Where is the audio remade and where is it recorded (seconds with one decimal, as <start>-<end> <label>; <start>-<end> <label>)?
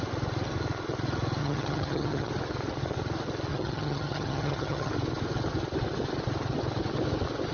0.0-1.4 recorded; 1.4-2.3 remade; 2.3-3.5 recorded; 3.5-4.9 remade; 4.9-7.5 recorded